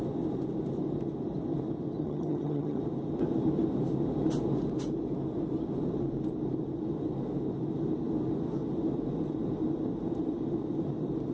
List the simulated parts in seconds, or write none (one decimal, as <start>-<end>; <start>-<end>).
2.0-2.8